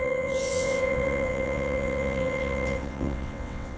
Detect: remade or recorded remade